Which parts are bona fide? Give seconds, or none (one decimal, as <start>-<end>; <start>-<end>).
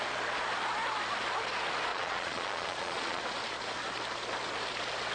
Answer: 0.0-1.9; 3.2-5.1